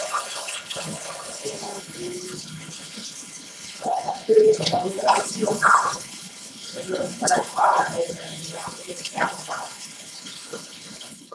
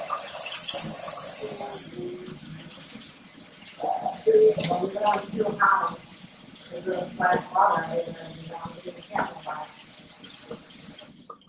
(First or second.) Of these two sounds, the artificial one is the first